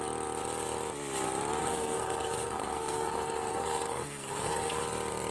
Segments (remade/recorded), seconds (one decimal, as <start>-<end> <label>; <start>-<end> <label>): 0.0-1.6 recorded; 1.6-4.8 remade; 4.8-5.3 recorded